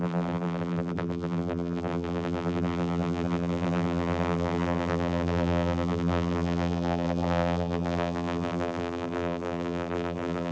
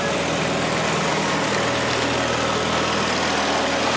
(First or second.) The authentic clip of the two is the second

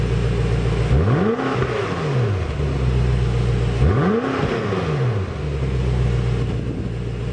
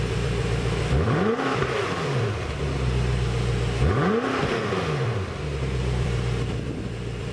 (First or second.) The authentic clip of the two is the first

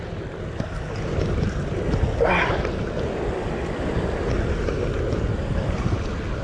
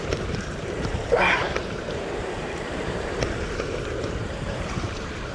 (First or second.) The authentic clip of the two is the first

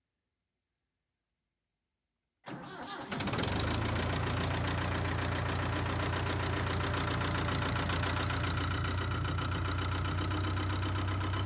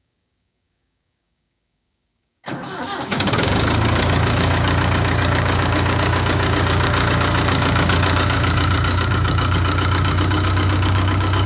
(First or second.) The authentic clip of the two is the first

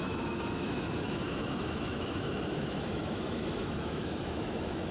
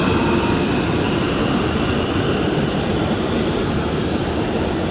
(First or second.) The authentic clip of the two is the second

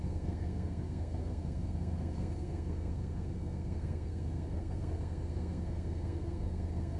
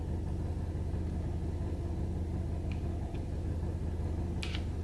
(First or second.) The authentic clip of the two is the second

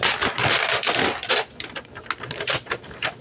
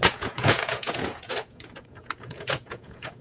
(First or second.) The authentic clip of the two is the first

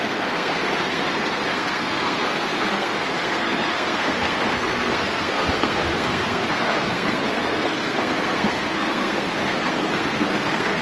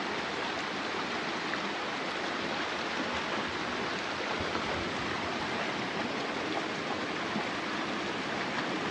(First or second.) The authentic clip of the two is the second